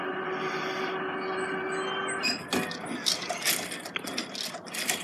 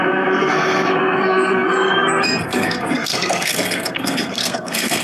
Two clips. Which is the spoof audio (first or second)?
second